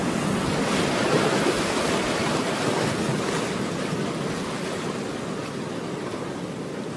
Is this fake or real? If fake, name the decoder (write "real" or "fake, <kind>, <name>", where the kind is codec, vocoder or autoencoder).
real